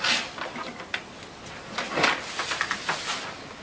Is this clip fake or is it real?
real